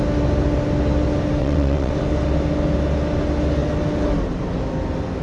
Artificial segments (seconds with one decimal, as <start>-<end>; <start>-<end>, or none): 1.4-1.9